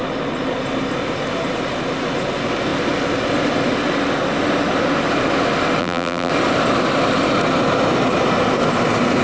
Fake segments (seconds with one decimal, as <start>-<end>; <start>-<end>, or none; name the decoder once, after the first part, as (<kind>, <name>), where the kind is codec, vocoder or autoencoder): 5.8-6.3 (vocoder, BigVGAN v2)